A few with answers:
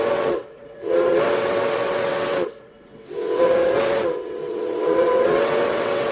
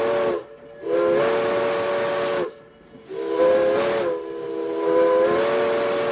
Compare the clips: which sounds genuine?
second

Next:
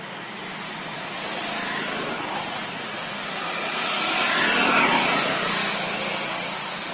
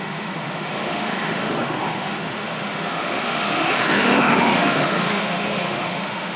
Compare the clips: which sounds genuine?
first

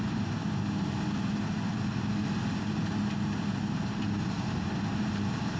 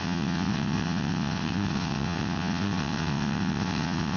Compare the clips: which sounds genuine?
first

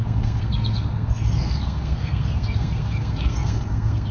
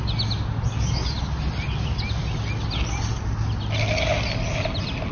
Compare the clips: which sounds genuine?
second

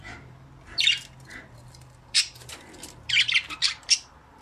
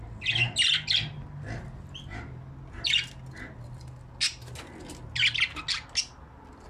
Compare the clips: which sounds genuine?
second